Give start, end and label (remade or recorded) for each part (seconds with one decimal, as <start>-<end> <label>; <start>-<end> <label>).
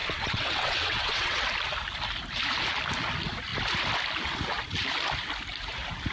0.0-1.4 remade; 1.4-6.1 recorded